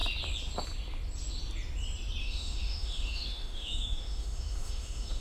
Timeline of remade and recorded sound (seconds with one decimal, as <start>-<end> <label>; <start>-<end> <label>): 0.0-2.2 recorded; 2.2-5.2 remade